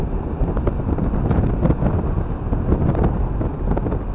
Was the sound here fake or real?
real